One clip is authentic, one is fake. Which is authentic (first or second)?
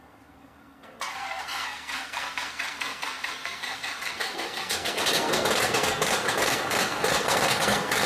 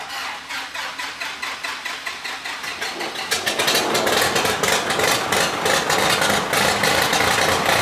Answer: second